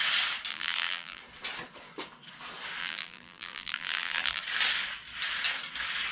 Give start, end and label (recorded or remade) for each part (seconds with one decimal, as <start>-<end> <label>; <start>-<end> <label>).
0.0-0.5 recorded; 0.5-1.2 remade; 1.2-2.8 recorded; 2.8-4.4 remade; 4.4-6.1 recorded